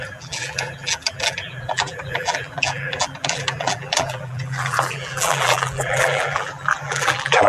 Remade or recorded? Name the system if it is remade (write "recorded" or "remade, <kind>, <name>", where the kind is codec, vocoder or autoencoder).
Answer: remade, vocoder, BigVGAN v2